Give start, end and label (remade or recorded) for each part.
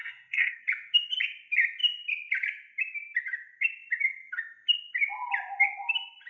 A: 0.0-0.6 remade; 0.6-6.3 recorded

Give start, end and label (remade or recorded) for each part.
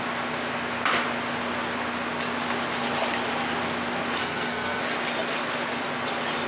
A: 0.0-4.2 recorded; 4.2-4.8 remade; 4.8-6.5 recorded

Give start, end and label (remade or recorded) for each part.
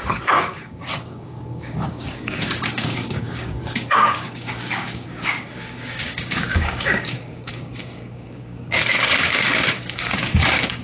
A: 0.0-10.8 remade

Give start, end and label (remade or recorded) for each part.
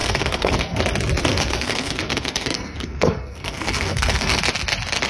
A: 0.0-0.8 remade; 0.8-1.3 recorded; 1.3-4.4 remade; 4.4-5.1 recorded